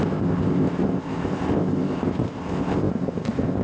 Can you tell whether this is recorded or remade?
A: remade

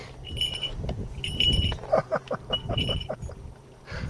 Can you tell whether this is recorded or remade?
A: remade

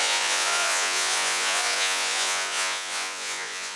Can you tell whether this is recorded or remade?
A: remade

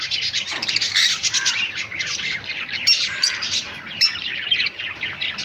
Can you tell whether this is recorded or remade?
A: remade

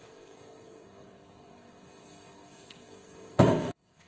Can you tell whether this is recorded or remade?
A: remade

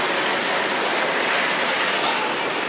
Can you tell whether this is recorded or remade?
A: recorded